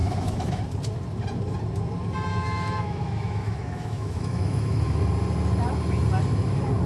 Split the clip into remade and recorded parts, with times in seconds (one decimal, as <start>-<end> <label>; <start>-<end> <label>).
0.0-0.6 remade; 0.6-2.3 recorded; 2.3-5.0 remade; 5.0-6.9 recorded